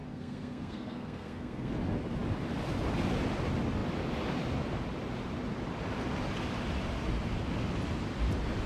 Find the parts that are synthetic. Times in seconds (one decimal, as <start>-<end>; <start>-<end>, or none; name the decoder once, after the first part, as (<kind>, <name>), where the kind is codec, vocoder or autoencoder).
0.0-1.7 (codec, SNAC)